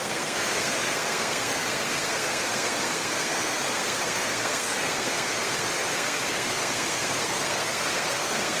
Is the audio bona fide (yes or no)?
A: no